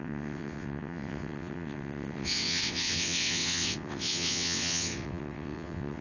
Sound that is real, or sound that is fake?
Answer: fake